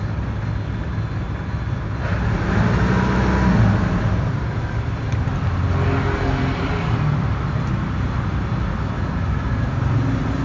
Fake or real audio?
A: real